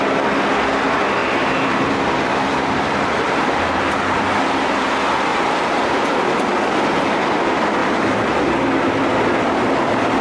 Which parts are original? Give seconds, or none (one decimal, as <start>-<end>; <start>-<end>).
0.0-1.2; 4.2-5.3; 6.7-7.8; 8.5-10.2

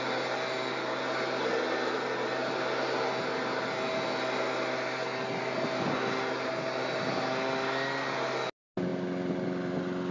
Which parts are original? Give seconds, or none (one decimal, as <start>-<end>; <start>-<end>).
0.0-10.1

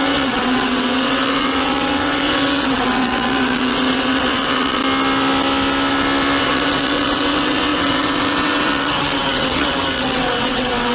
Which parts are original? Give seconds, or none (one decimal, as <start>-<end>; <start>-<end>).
4.8-6.4

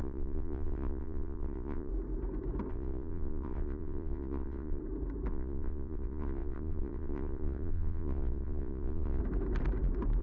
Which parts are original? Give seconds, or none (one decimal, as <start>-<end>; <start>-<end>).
1.9-2.7; 4.8-5.3; 9.2-10.2

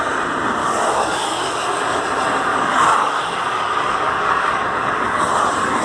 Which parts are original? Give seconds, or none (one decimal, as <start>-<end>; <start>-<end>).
0.0-0.6; 2.0-2.5; 5.2-5.8

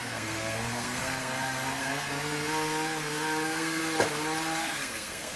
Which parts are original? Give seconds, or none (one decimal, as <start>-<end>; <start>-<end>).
3.8-4.6